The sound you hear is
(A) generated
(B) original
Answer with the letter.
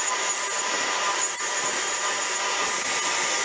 B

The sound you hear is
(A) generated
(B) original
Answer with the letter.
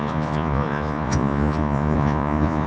A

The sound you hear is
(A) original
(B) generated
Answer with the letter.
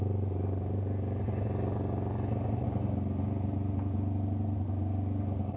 A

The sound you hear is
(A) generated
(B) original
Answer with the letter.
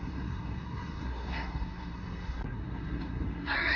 A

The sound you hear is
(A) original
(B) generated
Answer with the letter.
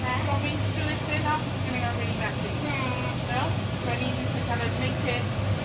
A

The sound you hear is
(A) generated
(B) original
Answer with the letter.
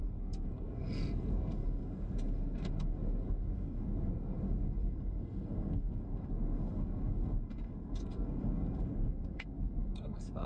A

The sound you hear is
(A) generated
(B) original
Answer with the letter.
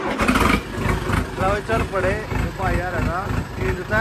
B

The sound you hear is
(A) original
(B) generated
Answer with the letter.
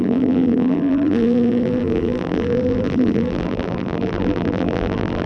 B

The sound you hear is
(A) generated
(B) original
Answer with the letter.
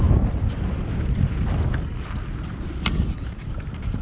B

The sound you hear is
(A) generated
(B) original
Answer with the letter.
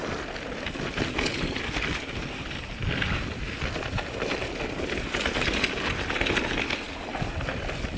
B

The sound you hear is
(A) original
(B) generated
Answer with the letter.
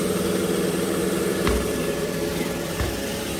B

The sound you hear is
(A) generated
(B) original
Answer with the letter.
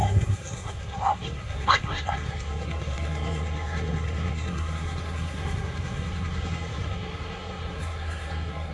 A